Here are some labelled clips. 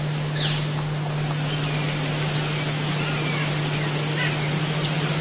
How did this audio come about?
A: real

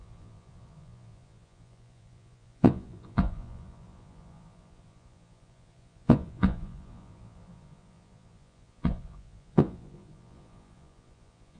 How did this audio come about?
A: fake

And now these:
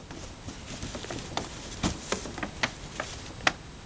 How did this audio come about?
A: real